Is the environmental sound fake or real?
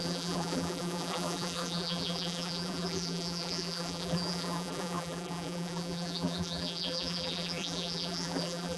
fake